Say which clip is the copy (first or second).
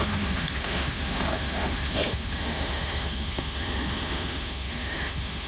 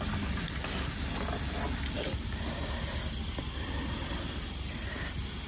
first